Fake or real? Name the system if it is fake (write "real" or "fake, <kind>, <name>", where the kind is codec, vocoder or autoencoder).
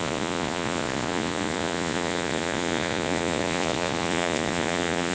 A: fake, vocoder, Vocos